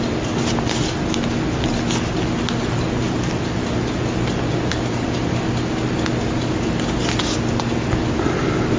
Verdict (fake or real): real